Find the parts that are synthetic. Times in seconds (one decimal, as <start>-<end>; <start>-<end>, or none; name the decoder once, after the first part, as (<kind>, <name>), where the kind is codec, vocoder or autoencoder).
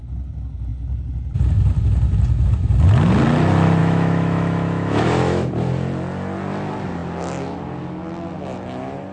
3.8-5.5 (autoencoder, DAC-VAE)